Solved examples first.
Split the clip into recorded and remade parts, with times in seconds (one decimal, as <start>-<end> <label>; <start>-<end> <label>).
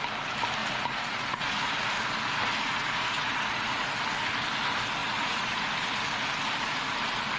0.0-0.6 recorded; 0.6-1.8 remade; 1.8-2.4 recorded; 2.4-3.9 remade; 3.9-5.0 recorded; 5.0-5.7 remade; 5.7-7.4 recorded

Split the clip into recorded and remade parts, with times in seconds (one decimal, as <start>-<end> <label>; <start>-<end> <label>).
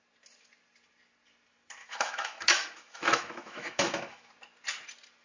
0.0-1.8 recorded; 1.8-4.3 remade; 4.3-5.2 recorded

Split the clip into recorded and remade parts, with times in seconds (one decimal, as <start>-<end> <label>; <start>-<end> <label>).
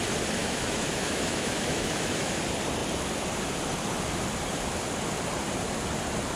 0.0-0.4 recorded; 0.4-2.4 remade; 2.4-6.4 recorded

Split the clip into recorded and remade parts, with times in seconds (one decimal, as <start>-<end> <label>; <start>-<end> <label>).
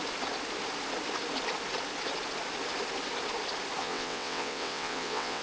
0.0-3.8 recorded; 3.8-5.4 remade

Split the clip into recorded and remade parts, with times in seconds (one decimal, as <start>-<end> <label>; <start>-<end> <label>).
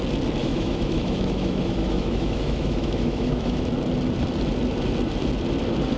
0.0-0.4 recorded; 0.4-3.7 remade; 3.7-6.0 recorded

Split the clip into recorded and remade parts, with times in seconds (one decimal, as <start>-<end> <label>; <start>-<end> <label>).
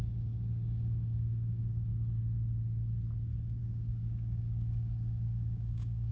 0.0-1.9 remade; 1.9-3.6 recorded; 3.6-6.1 remade